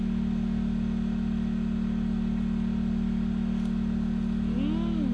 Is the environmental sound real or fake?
real